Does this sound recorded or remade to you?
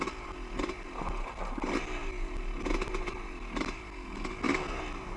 recorded